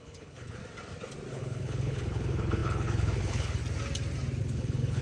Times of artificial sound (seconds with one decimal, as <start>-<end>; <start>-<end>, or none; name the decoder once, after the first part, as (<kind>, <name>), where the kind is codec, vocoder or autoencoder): 0.0-0.6 (codec, HILCodec); 1.3-3.6; 4.4-5.0